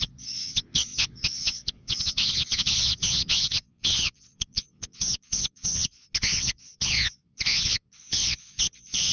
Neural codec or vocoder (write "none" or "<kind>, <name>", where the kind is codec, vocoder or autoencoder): vocoder, Vocos